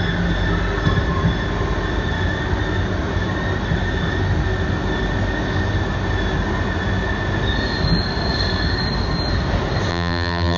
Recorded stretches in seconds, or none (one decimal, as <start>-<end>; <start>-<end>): 0.0-9.9